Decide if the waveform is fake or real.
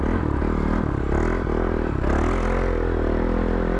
real